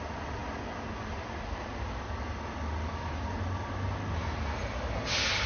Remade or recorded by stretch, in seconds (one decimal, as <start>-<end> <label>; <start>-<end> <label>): 0.0-5.5 recorded